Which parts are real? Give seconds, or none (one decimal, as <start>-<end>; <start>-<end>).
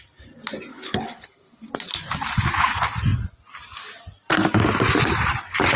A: 0.0-0.7; 1.7-5.8